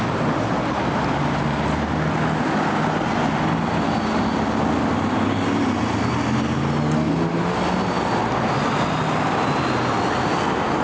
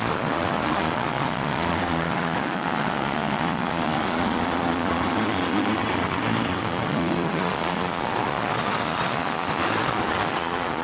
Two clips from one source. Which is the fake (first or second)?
second